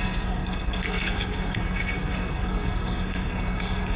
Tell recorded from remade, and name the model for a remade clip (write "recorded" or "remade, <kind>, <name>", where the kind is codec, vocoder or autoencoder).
remade, codec, SNAC